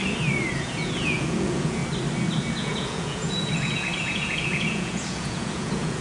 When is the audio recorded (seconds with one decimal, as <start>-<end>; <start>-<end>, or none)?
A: 0.0-0.6; 1.8-2.6